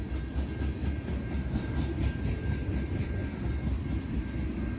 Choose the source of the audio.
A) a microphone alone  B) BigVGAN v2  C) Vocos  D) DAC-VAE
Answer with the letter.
A